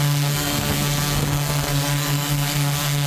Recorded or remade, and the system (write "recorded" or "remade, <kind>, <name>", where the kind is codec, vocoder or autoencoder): remade, codec, SNAC